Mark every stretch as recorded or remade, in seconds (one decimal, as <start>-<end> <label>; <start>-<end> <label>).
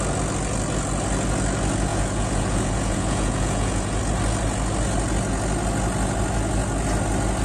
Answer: 0.0-1.9 recorded; 1.9-4.0 remade; 4.0-7.4 recorded